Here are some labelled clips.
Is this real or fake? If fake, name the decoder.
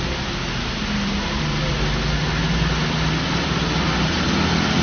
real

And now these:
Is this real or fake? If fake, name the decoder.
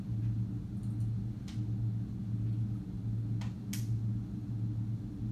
real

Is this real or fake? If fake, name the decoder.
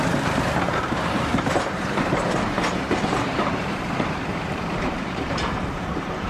fake, vocoder, BigVGAN v2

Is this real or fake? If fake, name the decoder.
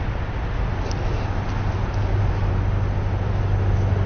real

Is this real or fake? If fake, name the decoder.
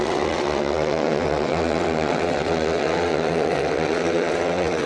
fake, vocoder, WaveNeXt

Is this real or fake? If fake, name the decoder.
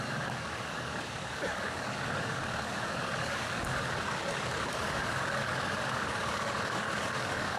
fake, codec, DAC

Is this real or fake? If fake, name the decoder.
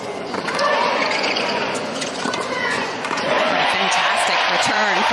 fake, vocoder, Vocos